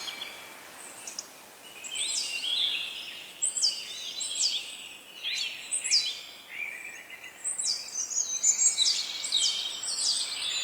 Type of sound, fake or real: real